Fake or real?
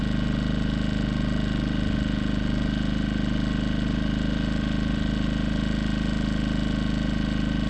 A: real